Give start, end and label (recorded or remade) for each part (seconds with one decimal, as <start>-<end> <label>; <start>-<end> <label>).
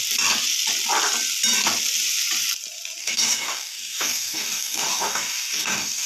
0.0-3.0 recorded; 3.0-6.1 remade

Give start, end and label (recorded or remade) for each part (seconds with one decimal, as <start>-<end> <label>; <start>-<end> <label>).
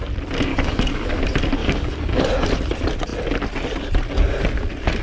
0.0-0.5 recorded; 0.5-1.2 remade; 1.2-1.6 recorded; 1.6-2.2 remade; 2.2-5.0 recorded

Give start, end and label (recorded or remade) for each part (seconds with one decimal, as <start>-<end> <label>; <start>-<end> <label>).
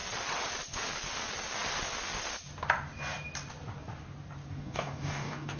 0.0-4.5 recorded; 4.5-5.6 remade